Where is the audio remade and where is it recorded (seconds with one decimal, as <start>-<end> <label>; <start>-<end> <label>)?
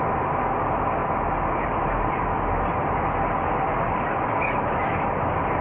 0.0-5.6 recorded